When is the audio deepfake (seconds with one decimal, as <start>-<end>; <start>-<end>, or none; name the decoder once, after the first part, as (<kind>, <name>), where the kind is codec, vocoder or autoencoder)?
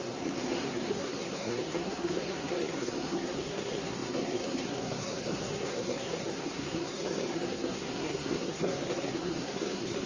0.0-10.1 (codec, SNAC)